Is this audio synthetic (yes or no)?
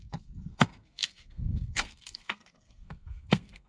yes